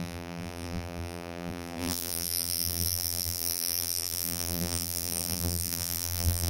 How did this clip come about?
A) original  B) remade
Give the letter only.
B